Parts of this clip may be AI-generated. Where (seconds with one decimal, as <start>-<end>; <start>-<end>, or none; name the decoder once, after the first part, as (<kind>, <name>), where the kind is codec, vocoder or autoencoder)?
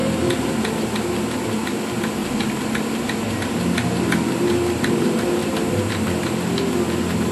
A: none